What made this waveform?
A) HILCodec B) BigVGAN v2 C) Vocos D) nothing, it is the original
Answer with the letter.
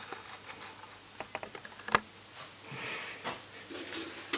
D